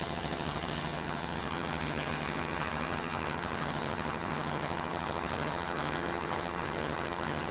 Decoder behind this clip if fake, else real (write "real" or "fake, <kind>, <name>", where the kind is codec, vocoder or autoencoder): fake, vocoder, HiFi-GAN